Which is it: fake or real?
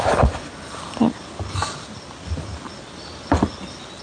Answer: real